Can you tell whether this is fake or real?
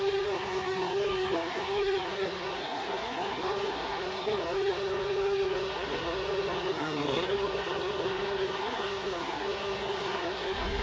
fake